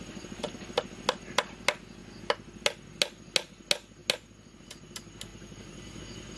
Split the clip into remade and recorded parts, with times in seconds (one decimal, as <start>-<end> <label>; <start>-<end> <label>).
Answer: 0.0-5.3 recorded; 5.3-6.0 remade; 6.0-6.4 recorded